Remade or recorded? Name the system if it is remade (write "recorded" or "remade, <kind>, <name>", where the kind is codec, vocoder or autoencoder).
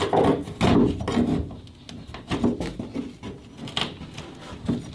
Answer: recorded